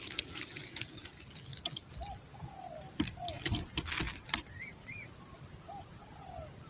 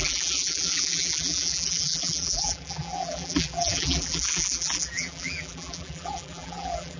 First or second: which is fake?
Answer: second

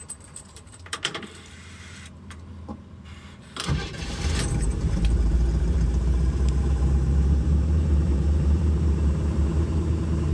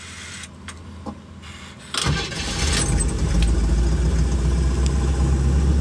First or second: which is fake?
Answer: first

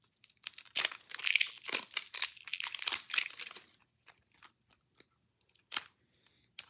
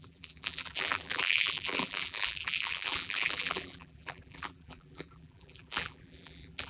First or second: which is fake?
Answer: second